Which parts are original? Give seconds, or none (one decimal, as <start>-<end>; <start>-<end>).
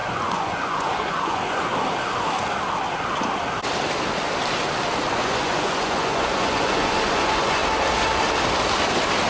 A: 1.7-5.1; 7.6-9.3